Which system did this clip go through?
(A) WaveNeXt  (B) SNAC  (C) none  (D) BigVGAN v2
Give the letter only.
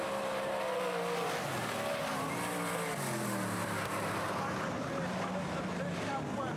C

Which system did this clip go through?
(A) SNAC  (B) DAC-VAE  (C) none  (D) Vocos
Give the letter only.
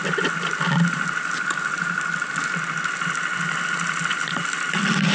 C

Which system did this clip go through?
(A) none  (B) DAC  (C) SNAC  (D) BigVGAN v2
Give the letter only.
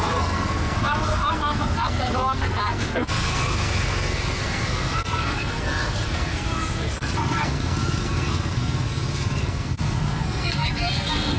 C